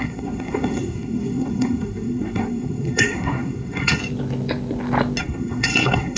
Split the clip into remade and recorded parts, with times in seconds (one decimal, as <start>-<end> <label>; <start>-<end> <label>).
0.0-4.0 remade; 4.0-5.2 recorded; 5.2-6.2 remade